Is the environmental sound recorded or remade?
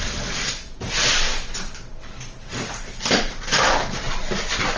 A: recorded